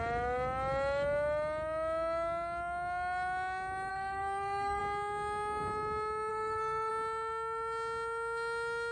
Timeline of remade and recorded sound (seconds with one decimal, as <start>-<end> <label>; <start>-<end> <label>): 0.0-3.9 recorded; 3.9-4.8 remade; 4.8-6.3 recorded; 6.3-6.9 remade; 6.9-8.9 recorded